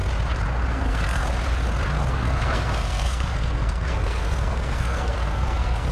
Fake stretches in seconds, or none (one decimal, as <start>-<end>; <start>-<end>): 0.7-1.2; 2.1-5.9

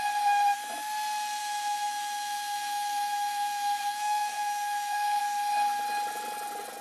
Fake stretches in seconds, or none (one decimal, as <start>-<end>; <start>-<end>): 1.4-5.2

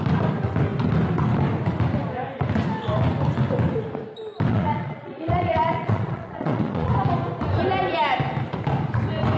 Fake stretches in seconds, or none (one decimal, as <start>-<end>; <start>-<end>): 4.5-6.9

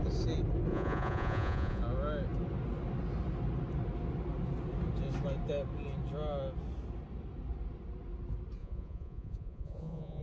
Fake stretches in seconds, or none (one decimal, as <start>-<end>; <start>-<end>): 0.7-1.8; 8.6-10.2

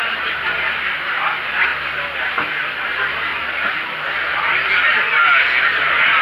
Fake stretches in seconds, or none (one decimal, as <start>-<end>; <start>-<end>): 3.3-4.4

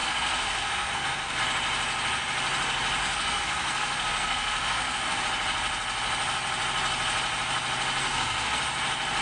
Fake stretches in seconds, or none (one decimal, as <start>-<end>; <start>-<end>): 0.0-1.4; 3.0-5.2; 8.0-8.6